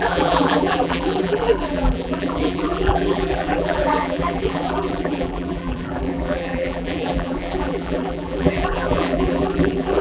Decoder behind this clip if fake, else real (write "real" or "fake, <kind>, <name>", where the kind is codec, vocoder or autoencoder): fake, vocoder, BigVGAN v2